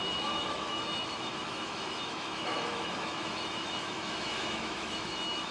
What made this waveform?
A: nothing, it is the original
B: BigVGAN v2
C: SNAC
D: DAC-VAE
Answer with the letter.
D